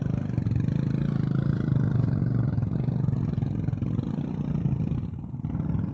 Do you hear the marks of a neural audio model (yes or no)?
no